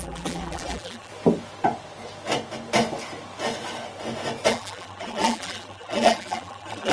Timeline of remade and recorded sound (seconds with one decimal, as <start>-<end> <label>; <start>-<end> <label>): 0.0-1.1 remade; 1.1-4.5 recorded; 4.5-6.9 remade